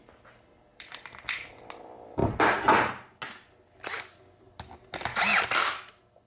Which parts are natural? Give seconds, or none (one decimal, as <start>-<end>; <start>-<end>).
0.0-0.7; 1.5-6.3